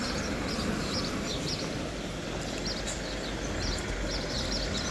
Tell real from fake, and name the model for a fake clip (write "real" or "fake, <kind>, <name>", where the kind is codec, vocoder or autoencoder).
real